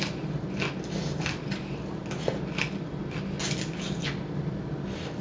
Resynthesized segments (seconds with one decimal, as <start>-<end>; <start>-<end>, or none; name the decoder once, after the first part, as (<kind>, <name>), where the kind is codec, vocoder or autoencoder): none